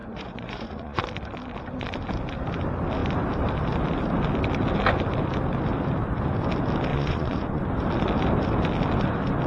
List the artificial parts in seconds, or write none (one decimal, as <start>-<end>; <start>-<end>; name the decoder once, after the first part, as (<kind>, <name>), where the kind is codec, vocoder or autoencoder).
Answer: 0.0-1.0 (vocoder, Vocos); 6.9-7.6